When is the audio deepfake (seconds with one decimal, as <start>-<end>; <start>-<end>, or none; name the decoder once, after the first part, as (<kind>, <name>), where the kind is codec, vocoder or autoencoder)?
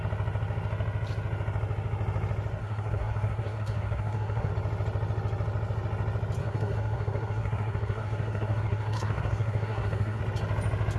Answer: 2.6-4.5 (codec, SNAC); 6.4-10.2